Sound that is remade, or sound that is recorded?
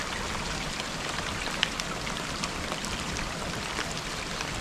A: remade